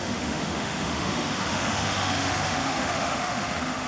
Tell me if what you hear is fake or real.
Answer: fake